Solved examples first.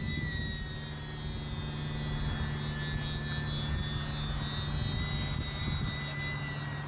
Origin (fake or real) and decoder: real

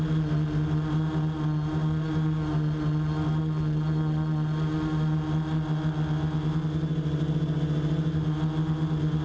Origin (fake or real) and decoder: real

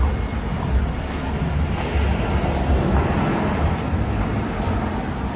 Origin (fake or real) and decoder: real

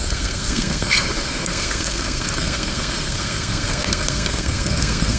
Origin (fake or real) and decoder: fake, codec, SNAC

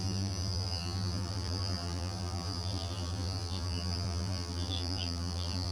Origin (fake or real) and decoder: fake, vocoder, BigVGAN v2